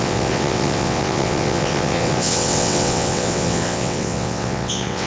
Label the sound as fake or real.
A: fake